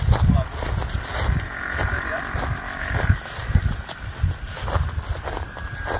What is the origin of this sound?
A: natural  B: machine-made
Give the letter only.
A